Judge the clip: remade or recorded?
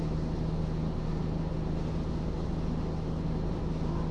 recorded